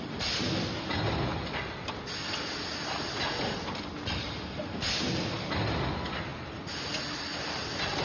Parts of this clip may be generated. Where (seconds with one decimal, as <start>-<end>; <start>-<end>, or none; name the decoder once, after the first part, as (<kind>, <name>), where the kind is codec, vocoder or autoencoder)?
none